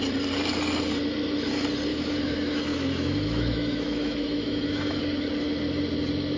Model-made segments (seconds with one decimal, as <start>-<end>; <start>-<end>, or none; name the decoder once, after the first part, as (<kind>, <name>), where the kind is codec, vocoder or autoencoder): 1.9-5.0 (autoencoder, DAC-VAE)